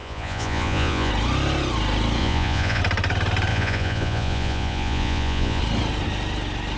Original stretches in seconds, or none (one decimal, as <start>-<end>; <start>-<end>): 1.1-2.2; 2.8-3.5; 5.6-6.8